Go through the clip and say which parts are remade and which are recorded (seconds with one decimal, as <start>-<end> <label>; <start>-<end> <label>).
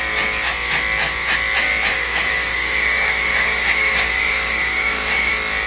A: 0.0-1.9 recorded; 1.9-5.3 remade; 5.3-5.7 recorded